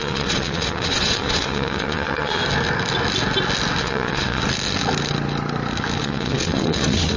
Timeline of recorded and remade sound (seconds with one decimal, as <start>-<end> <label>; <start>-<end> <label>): 0.0-2.4 remade; 2.4-3.8 recorded; 3.8-4.4 remade; 4.4-6.0 recorded; 6.0-7.2 remade

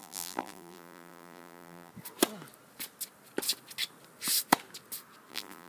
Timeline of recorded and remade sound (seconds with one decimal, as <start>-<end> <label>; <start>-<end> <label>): 0.0-1.9 remade; 1.9-5.3 recorded; 5.3-5.7 remade

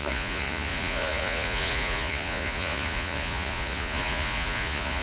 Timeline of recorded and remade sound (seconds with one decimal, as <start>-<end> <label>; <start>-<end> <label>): 0.0-5.0 remade

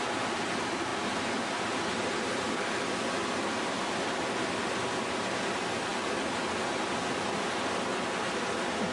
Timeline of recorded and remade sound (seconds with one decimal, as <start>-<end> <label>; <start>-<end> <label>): 0.0-8.9 recorded

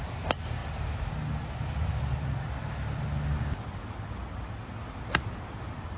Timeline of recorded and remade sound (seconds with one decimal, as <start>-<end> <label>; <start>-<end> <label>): 0.0-6.0 recorded

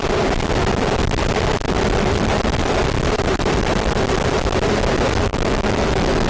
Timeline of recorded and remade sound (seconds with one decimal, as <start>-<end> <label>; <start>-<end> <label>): 0.0-5.3 recorded; 5.3-6.3 remade

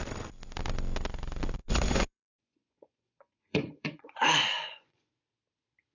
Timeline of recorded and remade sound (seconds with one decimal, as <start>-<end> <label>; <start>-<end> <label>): 0.0-1.6 recorded; 1.6-5.1 remade; 5.1-5.9 recorded

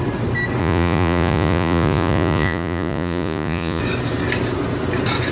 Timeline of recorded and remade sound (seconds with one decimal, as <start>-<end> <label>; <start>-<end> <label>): 0.0-0.6 recorded; 0.6-3.8 remade; 3.8-5.3 recorded